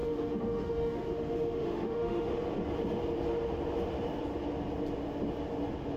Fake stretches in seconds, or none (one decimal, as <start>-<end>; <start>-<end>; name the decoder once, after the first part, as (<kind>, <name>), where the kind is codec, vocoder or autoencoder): 0.0-2.3 (autoencoder, DAC-VAE)